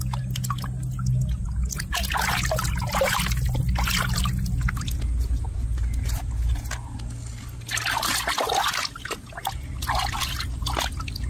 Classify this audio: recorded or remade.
recorded